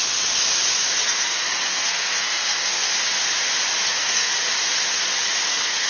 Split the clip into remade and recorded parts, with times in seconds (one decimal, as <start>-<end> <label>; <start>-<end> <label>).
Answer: 0.0-1.0 recorded; 1.0-2.9 remade; 2.9-3.9 recorded; 3.9-4.3 remade; 4.3-5.5 recorded; 5.5-5.9 remade

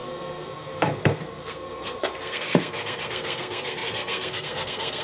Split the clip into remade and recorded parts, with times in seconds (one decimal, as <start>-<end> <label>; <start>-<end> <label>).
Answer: 0.0-5.0 remade

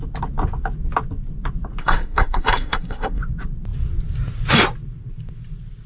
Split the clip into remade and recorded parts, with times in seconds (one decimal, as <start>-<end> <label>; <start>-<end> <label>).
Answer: 0.0-1.8 recorded; 1.8-3.2 remade; 3.2-5.9 recorded

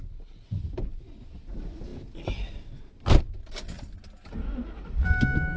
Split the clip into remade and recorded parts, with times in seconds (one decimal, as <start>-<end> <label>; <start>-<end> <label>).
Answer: 0.0-5.6 recorded

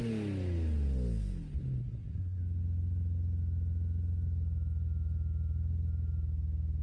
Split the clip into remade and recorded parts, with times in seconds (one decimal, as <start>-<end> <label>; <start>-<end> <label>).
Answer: 0.0-1.8 recorded; 1.8-2.4 remade; 2.4-6.8 recorded